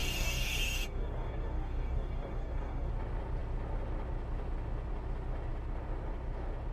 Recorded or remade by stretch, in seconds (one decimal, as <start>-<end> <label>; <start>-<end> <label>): 0.0-2.9 remade; 2.9-6.7 recorded